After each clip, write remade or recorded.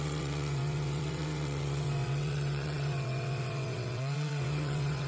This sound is remade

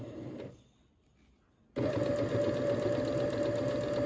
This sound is recorded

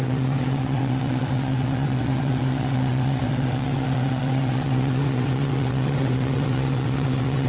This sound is remade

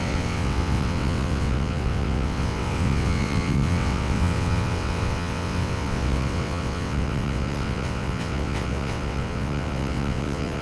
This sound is remade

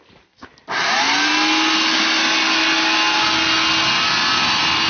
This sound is recorded